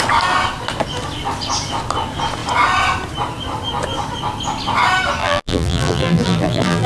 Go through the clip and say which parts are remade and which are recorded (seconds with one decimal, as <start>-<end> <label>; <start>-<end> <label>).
0.0-5.2 recorded; 5.2-6.9 remade